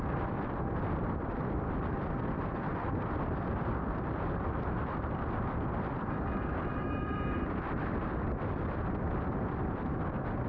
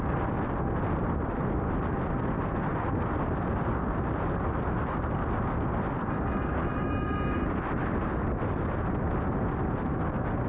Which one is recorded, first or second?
second